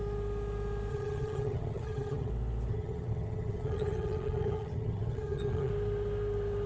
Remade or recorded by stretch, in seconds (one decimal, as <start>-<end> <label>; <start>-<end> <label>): 0.0-0.9 recorded; 0.9-2.3 remade; 2.3-2.7 recorded; 2.7-5.7 remade; 5.7-6.7 recorded